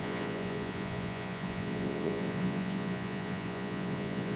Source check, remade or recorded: remade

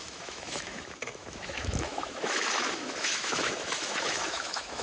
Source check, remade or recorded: remade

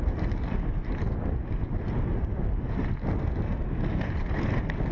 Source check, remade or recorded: recorded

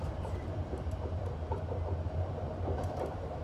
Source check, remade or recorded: remade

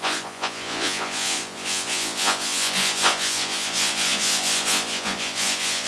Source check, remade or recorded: remade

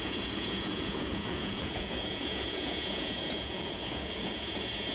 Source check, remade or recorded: remade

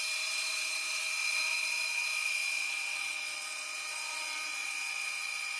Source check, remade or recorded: remade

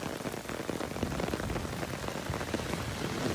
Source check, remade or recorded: recorded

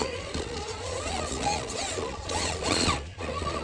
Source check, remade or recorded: remade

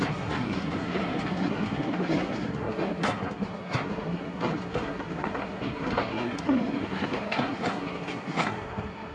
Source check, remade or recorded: remade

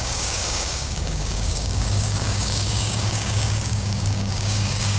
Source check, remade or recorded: remade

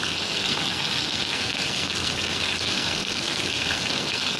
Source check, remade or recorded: remade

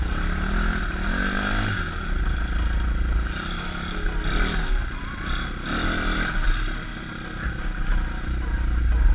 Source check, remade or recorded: recorded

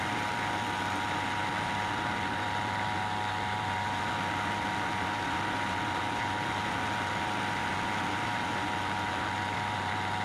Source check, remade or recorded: recorded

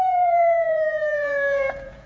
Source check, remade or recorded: remade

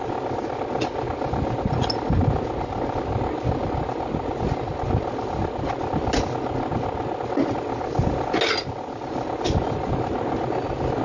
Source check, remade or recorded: recorded